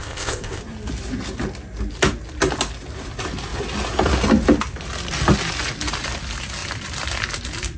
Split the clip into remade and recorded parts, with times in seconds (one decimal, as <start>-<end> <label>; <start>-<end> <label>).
0.0-0.6 remade; 0.6-7.8 recorded